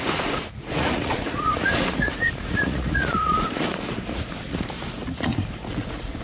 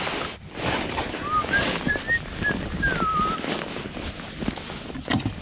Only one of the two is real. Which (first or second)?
second